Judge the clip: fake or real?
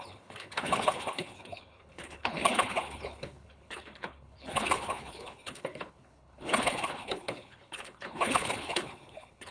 fake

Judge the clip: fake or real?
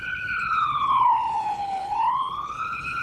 fake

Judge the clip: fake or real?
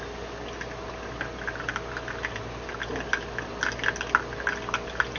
real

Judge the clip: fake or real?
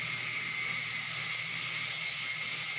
real